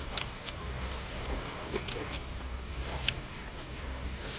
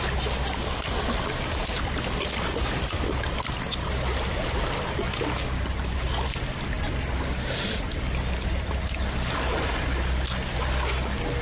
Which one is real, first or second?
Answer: second